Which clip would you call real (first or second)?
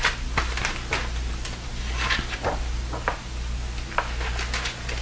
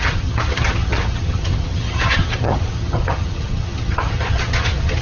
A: first